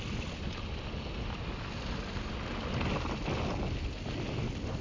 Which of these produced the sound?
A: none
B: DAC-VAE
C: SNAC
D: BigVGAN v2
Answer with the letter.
A